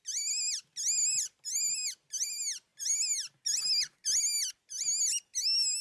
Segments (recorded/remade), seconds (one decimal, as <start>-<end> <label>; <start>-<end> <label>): 0.0-5.8 recorded